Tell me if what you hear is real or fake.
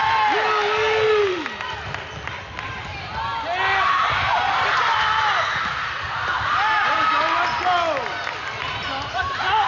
real